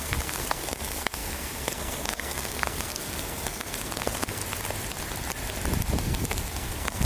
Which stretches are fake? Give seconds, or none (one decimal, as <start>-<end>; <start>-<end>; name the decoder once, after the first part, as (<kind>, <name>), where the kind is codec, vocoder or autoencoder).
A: 0.0-4.4 (codec, SNAC); 6.0-7.1